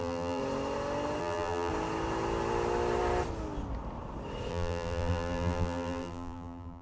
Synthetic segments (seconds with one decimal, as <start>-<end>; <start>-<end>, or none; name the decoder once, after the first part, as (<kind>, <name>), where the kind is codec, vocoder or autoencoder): 0.0-0.4 (vocoder, BigVGAN v2); 1.2-1.7; 4.5-6.8